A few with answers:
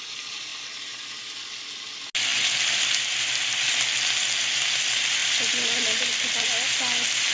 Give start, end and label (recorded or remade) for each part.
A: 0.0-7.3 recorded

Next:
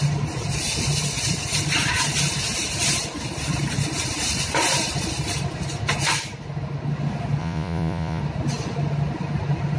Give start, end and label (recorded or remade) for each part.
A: 0.0-7.4 recorded; 7.4-8.2 remade; 8.2-9.8 recorded

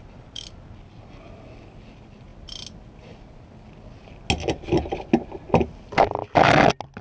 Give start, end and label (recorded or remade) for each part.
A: 0.0-7.0 recorded